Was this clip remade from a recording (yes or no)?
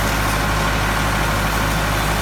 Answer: no